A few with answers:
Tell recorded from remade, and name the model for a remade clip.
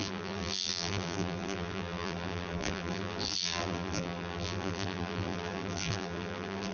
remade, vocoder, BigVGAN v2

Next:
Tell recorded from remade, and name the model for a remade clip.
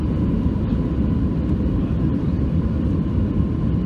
recorded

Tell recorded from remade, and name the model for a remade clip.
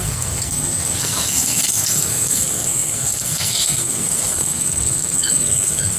remade, codec, SNAC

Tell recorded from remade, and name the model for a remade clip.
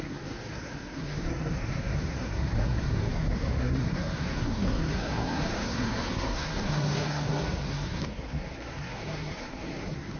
remade, codec, SNAC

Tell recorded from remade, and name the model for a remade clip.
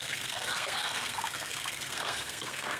remade, codec, SNAC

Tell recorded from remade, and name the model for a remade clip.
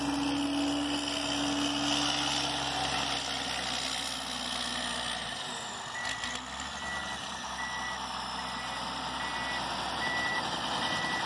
recorded